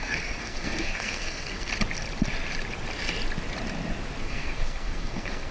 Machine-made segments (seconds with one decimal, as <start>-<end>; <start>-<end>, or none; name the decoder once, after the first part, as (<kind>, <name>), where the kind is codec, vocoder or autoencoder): 0.0-1.7 (codec, SNAC); 4.2-5.5